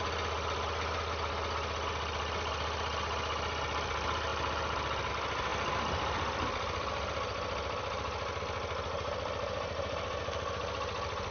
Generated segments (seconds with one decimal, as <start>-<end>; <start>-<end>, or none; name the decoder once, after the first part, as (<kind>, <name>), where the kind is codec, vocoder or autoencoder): none